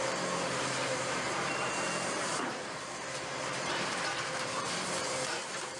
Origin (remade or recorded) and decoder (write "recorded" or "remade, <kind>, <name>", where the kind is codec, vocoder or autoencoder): remade, vocoder, BigVGAN v2